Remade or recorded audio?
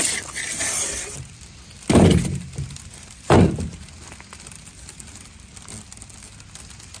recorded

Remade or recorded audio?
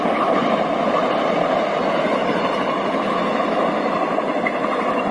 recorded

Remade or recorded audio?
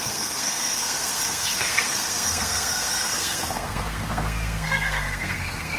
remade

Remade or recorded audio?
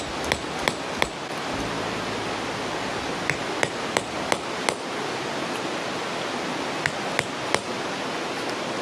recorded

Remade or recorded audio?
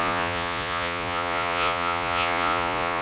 remade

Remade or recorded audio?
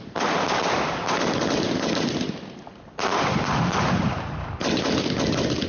recorded